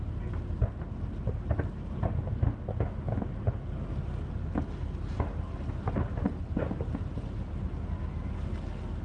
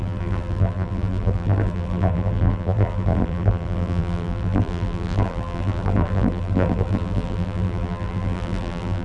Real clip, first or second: first